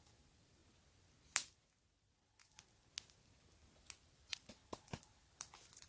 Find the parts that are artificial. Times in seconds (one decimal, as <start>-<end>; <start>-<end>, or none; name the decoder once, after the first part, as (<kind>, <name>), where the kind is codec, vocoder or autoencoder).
0.0-0.6 (vocoder, BigVGAN v2); 4.1-5.9

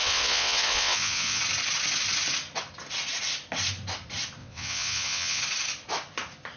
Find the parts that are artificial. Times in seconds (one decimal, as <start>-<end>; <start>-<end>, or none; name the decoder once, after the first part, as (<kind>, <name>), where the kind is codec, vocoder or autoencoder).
0.0-1.4 (vocoder, WaveNeXt); 4.4-5.4